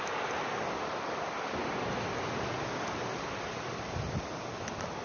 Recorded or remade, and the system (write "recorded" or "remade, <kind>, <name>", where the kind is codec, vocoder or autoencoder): recorded